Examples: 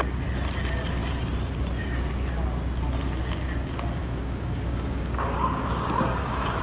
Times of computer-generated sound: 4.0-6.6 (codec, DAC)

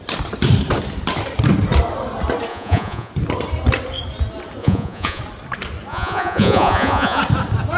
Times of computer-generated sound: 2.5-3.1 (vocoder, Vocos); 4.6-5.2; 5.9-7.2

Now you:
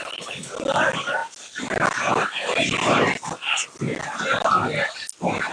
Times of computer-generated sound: 0.0-0.5 (codec, HILCodec)

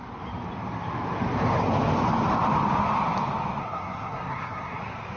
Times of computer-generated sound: 3.6-4.8 (codec, SNAC)

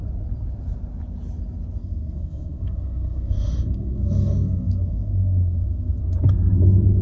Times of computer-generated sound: 1.8-6.0 (codec, SNAC)